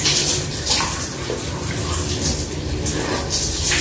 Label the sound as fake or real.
real